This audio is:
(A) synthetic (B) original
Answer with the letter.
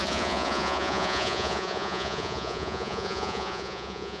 A